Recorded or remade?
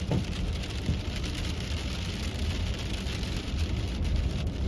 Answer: recorded